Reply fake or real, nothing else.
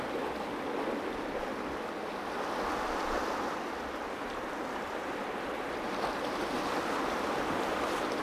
real